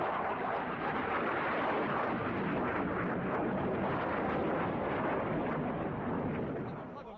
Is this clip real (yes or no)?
yes